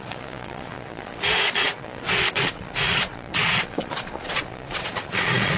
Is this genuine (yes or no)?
no